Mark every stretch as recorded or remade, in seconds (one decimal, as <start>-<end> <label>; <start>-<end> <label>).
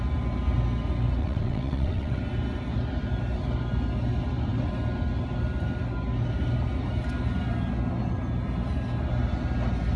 0.0-1.2 recorded; 1.2-2.2 remade; 2.2-10.0 recorded